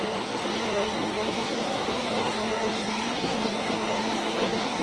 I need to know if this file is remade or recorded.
remade